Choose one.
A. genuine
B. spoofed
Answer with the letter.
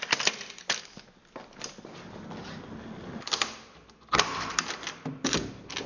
A